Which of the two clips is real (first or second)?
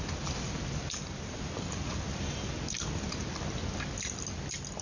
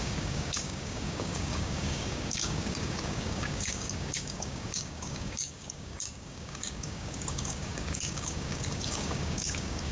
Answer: first